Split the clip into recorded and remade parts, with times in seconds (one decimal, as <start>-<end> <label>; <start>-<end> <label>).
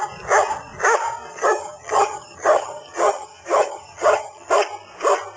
0.0-1.3 recorded; 1.3-4.5 remade; 4.5-5.4 recorded